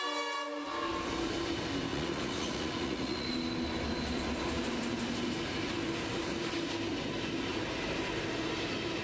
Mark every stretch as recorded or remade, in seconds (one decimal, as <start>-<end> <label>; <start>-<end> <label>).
0.0-1.9 recorded; 1.9-3.3 remade; 3.3-9.0 recorded